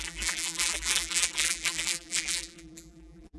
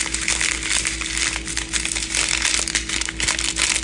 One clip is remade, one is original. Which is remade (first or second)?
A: first